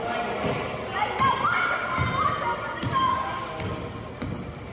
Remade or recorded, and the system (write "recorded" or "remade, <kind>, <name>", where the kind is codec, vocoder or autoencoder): recorded